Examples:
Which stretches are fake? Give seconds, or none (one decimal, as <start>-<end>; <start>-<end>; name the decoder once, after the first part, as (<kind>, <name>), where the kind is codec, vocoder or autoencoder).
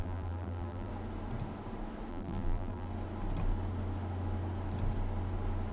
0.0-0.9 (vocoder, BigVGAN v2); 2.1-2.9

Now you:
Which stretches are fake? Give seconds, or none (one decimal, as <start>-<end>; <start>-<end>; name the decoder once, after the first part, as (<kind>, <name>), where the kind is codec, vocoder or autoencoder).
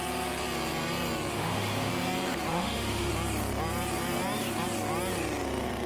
1.3-1.9 (autoencoder, DAC-VAE); 2.5-3.1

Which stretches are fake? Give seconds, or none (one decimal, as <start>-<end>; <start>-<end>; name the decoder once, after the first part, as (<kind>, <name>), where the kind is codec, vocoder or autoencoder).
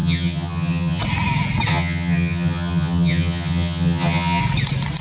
0.0-1.0 (vocoder, HiFi-GAN); 1.7-4.4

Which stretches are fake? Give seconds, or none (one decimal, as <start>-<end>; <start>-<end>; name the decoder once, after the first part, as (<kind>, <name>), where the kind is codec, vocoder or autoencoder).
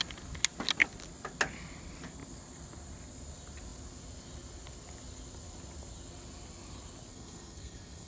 7.1-8.1 (codec, SNAC)